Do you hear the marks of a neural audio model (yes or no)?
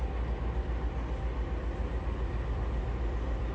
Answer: no